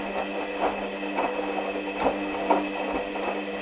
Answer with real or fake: real